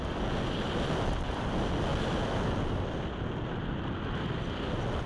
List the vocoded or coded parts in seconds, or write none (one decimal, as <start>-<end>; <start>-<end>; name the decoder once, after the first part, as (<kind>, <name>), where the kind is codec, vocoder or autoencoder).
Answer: none